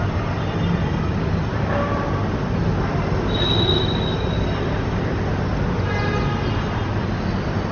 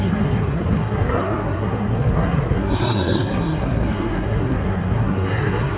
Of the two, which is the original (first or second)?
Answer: first